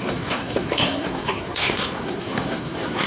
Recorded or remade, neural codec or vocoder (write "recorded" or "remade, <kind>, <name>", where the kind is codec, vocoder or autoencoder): remade, codec, SNAC